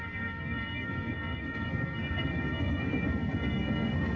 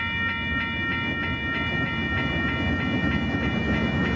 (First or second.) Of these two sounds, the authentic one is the second